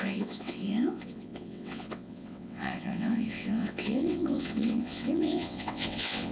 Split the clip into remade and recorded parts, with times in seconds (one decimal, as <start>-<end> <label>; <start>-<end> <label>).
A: 0.0-6.3 remade